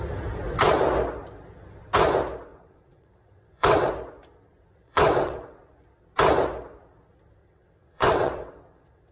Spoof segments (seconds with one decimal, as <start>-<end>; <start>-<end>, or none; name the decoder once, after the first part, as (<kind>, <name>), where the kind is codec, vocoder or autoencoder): 2.5-3.9 (vocoder, WaveNeXt); 4.8-5.6; 7.4-9.1